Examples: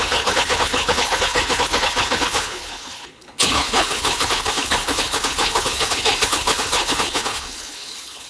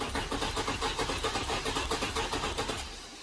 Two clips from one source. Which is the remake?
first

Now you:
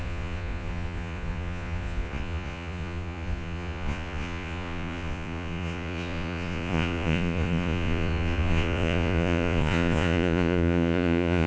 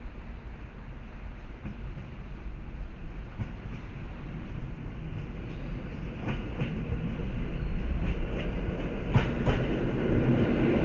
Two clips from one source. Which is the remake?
first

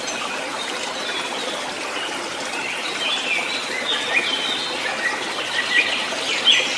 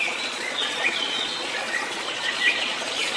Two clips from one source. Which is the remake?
second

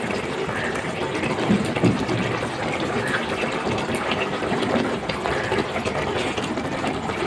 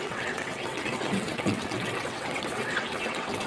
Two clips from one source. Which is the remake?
second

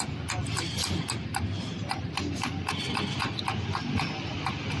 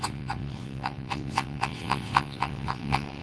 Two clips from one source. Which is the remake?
second